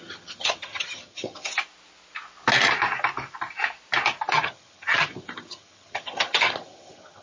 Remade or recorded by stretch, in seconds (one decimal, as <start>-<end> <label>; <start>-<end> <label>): 0.0-1.5 remade; 1.5-4.3 recorded; 4.3-7.2 remade